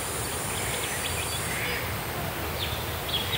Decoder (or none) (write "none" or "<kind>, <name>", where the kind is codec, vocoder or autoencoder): none